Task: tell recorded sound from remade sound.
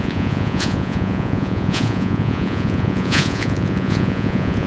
remade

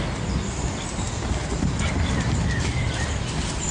recorded